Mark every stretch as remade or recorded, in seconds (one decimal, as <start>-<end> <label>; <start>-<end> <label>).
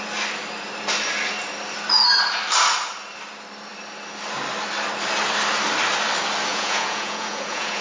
0.0-6.5 recorded; 6.5-7.8 remade